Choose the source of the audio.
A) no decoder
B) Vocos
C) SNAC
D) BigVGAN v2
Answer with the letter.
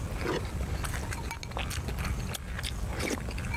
A